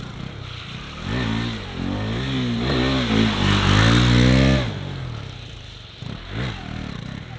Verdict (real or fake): real